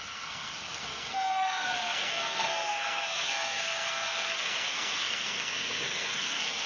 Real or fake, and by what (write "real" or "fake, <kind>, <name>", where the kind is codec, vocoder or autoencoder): fake, codec, SNAC